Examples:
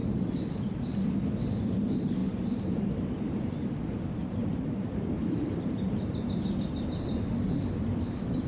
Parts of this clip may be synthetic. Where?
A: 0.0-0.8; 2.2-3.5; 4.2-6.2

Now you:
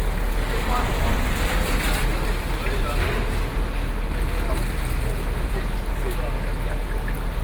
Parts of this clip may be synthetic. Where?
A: none